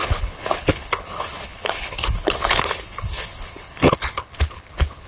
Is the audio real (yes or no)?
no